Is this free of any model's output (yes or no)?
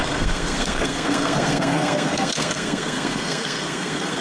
no